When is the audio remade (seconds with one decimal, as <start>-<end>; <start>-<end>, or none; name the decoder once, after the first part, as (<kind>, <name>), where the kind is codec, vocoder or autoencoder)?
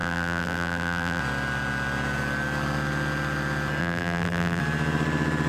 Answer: 0.0-1.2 (vocoder, BigVGAN v2); 3.8-4.6